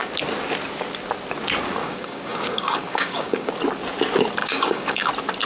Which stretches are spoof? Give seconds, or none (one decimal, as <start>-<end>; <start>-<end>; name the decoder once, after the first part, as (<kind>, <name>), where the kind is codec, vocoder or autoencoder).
1.8-3.5 (codec, DAC); 4.4-5.1